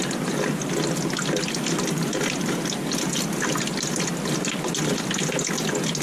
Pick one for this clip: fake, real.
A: real